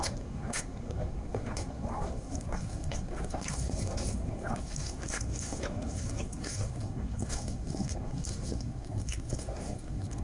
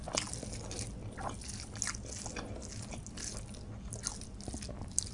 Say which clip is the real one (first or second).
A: second